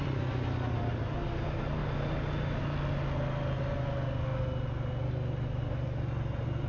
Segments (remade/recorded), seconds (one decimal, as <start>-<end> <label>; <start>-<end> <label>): 0.0-6.7 recorded